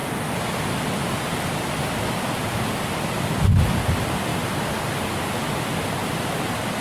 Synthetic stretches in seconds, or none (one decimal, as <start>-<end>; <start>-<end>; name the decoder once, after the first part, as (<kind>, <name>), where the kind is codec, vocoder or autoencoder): none